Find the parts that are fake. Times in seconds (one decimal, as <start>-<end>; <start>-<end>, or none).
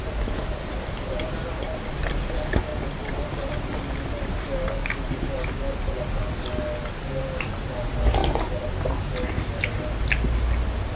none